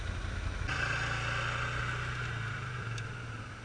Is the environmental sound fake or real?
real